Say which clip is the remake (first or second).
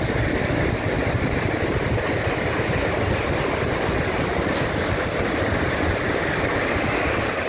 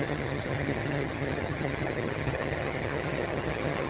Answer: second